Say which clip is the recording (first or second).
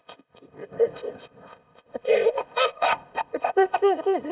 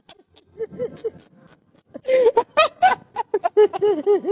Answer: second